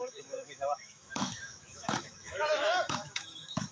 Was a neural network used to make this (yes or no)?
yes